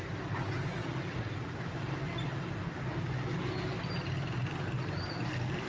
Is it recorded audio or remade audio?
recorded